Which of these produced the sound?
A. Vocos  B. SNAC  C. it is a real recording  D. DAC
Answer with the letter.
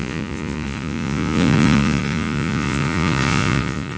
A